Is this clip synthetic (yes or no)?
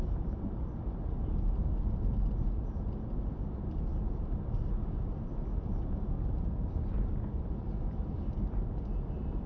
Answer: no